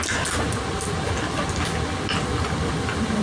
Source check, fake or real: real